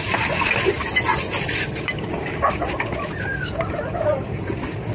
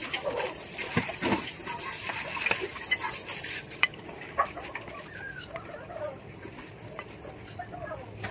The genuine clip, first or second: first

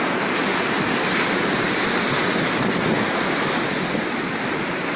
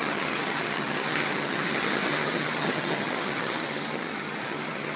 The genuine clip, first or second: first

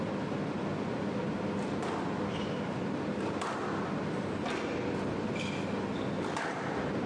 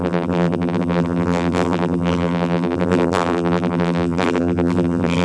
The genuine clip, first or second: first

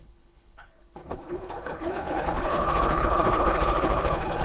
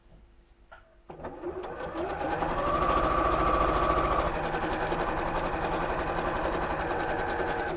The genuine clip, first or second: second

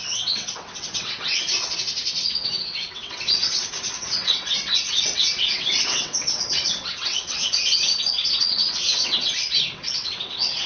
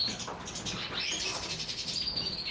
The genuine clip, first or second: second